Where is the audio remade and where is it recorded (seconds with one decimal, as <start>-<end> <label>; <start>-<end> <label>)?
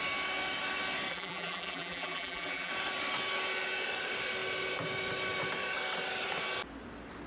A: 0.0-1.1 recorded; 1.1-2.7 remade; 2.7-7.3 recorded